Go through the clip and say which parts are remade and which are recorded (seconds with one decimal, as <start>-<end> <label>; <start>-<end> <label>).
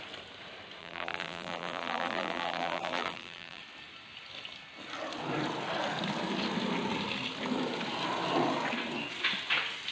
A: 0.0-0.8 recorded; 0.8-3.6 remade; 3.6-9.9 recorded